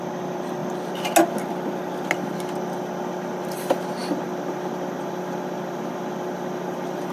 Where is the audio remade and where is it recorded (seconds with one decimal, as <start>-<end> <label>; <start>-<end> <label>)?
0.0-7.1 recorded

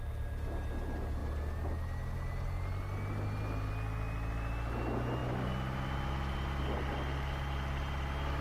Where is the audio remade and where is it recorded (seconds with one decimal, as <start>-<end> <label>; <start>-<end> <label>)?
0.0-8.4 recorded

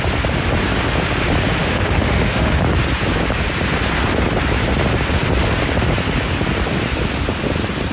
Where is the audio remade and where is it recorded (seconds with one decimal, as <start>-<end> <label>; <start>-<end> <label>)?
0.0-1.6 recorded; 1.6-2.6 remade; 2.6-7.9 recorded

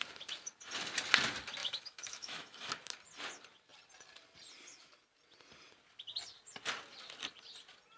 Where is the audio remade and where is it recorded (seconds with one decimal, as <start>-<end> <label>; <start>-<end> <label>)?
0.0-1.6 recorded; 1.6-2.7 remade; 2.7-8.0 recorded

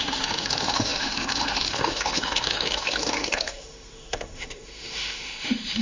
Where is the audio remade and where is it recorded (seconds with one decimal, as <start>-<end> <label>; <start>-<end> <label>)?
0.0-5.8 remade

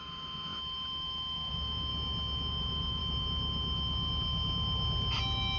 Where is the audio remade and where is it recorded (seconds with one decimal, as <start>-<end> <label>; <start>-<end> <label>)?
0.0-1.9 remade; 1.9-2.5 recorded; 2.5-3.0 remade; 3.0-5.6 recorded

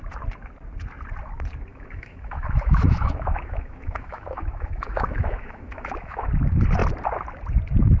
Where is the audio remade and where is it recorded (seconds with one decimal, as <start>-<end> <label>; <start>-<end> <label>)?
0.0-1.7 recorded; 1.7-6.3 remade; 6.3-8.0 recorded